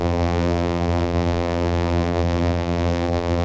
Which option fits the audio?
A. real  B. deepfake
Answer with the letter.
B